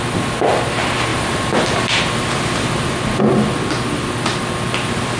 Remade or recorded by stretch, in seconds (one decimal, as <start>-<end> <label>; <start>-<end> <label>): 0.0-1.1 recorded; 1.1-3.2 remade; 3.2-5.2 recorded